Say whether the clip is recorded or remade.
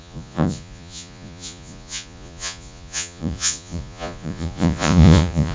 remade